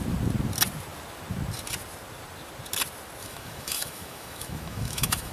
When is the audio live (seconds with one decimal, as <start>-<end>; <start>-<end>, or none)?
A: 0.0-3.2

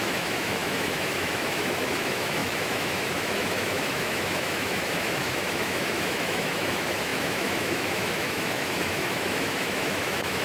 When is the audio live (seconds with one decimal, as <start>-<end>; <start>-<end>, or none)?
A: none

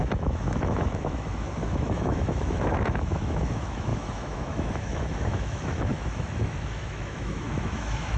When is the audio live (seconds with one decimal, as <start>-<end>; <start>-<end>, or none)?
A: none

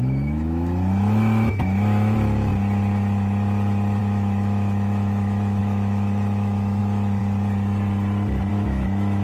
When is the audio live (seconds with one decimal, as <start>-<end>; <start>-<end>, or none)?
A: 2.5-4.0; 7.2-8.5

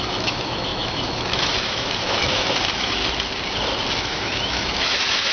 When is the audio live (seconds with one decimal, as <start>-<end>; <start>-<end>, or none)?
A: 3.0-4.0

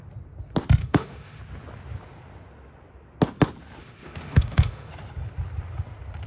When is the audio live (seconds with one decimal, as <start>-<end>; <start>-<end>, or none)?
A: 0.0-0.8; 1.4-3.8; 4.9-6.3